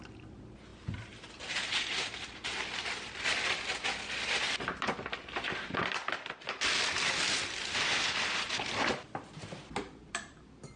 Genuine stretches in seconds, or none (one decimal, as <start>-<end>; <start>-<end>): 0.7-1.8